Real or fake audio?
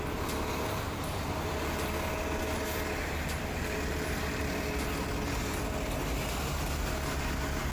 real